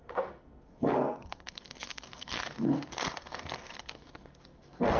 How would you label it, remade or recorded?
remade